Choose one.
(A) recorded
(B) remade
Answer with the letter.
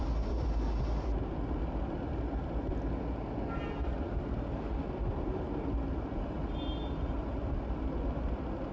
A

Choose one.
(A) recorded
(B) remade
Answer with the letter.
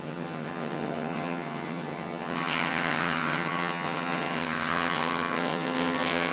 B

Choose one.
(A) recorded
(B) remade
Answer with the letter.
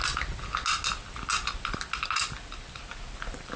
A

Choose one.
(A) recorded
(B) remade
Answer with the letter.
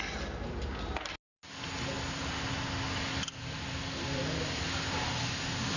A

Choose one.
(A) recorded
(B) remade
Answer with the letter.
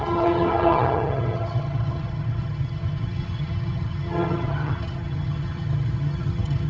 B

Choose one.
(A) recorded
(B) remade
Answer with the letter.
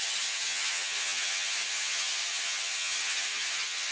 B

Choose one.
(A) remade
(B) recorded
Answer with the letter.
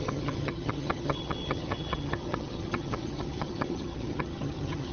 A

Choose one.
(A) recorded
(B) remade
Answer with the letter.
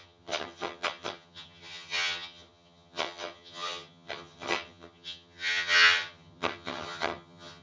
B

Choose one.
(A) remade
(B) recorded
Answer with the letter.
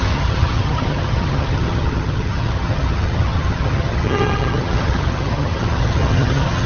A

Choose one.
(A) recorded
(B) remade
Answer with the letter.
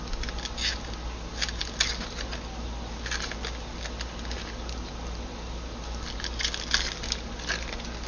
A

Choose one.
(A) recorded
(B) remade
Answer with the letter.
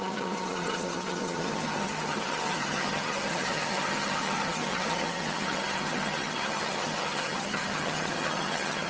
B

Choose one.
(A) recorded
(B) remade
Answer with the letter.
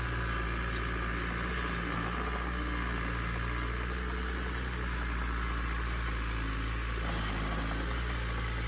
A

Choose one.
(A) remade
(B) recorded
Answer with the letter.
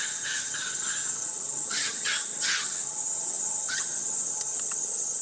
A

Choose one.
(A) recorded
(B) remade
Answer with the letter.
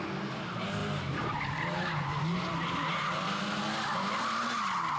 A